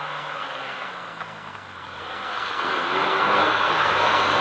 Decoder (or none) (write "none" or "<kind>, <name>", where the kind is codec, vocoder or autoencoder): codec, SNAC